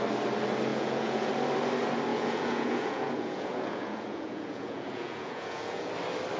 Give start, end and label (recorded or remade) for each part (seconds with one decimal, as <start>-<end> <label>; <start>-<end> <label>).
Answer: 0.0-0.7 recorded; 0.7-1.3 remade; 1.3-2.1 recorded; 2.1-5.9 remade; 5.9-6.4 recorded